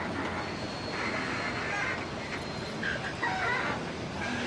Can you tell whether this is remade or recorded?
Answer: recorded